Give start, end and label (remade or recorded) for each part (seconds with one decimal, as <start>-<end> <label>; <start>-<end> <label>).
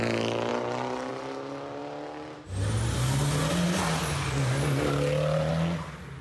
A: 0.0-6.2 recorded